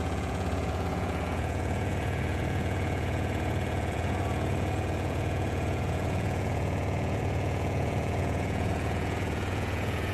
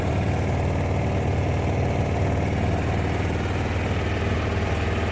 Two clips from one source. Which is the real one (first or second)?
second